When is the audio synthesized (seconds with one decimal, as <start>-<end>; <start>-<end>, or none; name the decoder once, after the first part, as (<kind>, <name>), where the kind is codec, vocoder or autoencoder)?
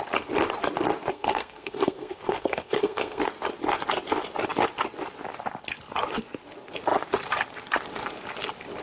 1.1-3.2 (codec, SNAC)